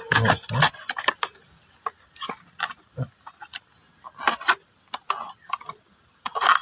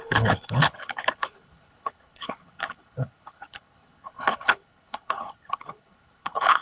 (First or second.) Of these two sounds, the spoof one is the second